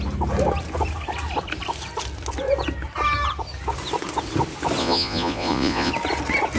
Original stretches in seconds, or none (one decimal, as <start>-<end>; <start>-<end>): 0.0-4.8; 5.9-6.6